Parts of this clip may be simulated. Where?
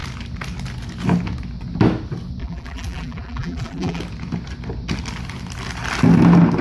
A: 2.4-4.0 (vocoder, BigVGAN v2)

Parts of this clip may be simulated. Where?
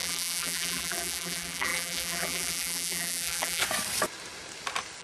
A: 0.0-3.6 (vocoder, BigVGAN v2)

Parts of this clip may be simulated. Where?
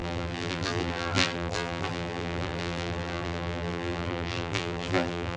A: 0.0-5.4 (vocoder, BigVGAN v2)